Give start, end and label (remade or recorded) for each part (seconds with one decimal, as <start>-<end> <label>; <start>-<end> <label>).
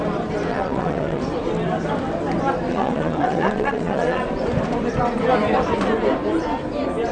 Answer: 0.0-0.5 recorded; 0.5-1.2 remade; 1.2-2.7 recorded; 2.7-4.2 remade; 4.2-7.1 recorded